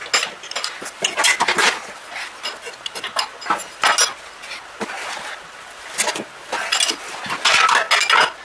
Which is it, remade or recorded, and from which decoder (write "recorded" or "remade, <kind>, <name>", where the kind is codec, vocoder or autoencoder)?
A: recorded